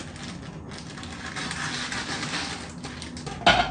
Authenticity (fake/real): real